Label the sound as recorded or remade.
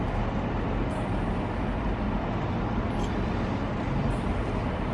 recorded